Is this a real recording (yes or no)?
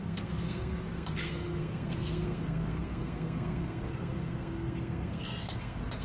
no